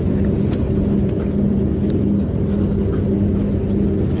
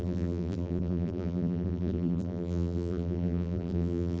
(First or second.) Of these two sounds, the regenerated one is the second